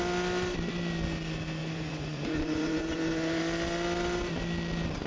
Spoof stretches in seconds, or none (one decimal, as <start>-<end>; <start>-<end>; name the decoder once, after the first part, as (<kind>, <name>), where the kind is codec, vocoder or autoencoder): 1.6-3.4 (vocoder, Vocos)